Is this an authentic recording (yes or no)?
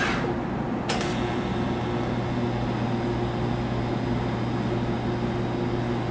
yes